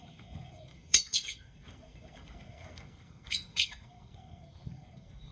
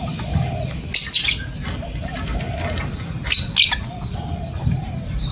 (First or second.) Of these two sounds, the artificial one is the first